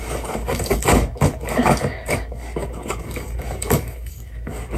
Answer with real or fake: fake